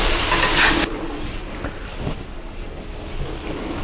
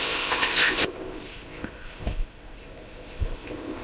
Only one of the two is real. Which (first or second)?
first